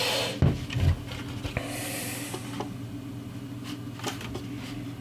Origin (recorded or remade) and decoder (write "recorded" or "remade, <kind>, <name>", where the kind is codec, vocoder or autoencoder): recorded